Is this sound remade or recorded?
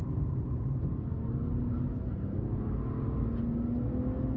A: recorded